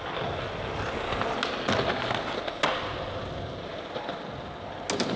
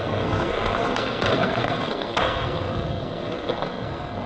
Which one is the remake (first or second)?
second